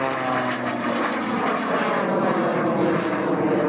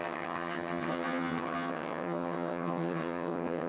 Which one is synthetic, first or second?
second